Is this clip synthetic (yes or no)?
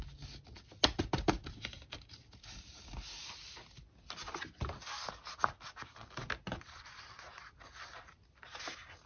no